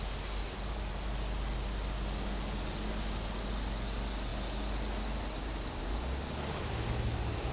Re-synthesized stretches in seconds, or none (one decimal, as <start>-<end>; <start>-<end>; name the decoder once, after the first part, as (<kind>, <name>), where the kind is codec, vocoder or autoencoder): none